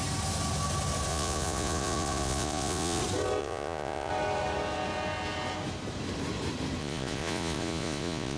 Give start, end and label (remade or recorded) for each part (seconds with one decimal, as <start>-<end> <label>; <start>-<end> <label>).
0.0-1.1 recorded; 1.1-3.0 remade; 3.0-3.4 recorded; 3.4-4.1 remade; 4.1-6.8 recorded; 6.8-8.4 remade